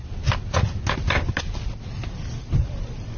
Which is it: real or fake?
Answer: real